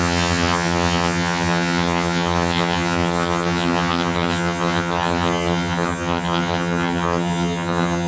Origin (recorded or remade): remade